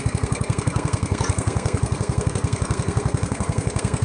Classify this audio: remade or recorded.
remade